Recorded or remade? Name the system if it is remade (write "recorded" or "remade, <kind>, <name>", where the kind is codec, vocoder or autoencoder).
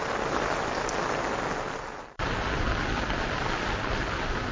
recorded